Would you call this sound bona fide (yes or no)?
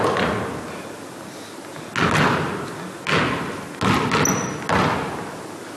yes